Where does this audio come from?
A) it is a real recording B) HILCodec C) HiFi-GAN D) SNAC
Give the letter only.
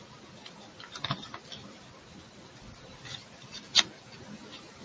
A